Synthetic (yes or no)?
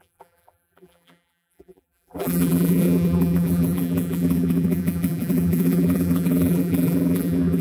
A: yes